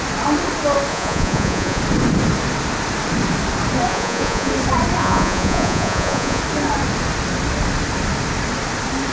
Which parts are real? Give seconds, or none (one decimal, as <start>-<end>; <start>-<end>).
0.0-0.9; 1.8-3.9; 4.5-5.0; 6.4-9.1